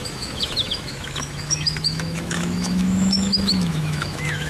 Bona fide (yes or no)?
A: no